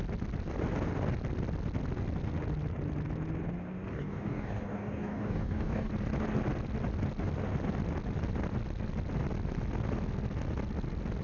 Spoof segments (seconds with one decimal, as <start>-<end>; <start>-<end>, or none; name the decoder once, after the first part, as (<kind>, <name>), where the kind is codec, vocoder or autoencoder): 3.9-5.9 (codec, DAC)